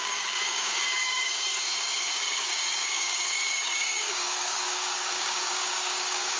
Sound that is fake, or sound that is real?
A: fake